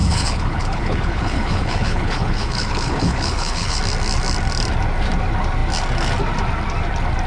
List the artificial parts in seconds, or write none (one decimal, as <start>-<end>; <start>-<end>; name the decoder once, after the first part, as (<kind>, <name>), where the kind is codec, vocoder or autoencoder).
0.0-3.8 (codec, HILCodec)